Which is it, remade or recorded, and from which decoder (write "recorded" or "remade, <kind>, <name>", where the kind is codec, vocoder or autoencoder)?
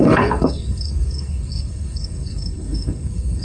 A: remade, codec, SNAC